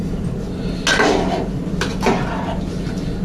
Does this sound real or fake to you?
real